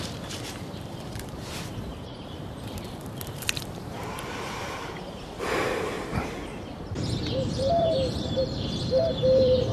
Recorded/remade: remade